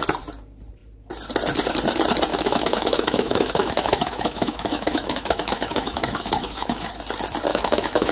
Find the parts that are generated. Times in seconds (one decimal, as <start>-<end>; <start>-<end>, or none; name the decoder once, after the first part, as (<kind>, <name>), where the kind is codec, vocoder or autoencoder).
2.3-6.9 (autoencoder, DAC-VAE); 7.5-8.1